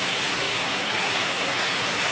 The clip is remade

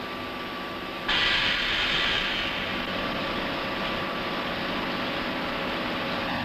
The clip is recorded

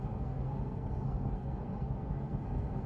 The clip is remade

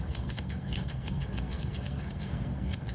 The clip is remade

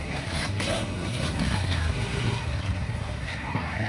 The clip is remade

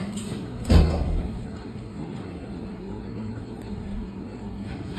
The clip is remade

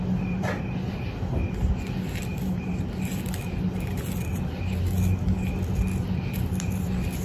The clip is recorded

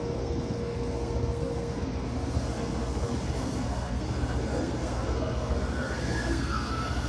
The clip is remade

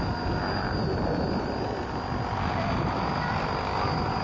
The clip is recorded